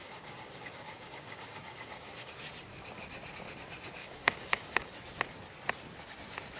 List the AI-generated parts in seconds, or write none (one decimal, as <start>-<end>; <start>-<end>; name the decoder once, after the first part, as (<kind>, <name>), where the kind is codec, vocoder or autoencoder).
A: 0.0-2.3 (codec, DAC); 4.0-4.9